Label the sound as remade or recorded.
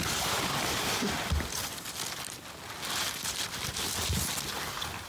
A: recorded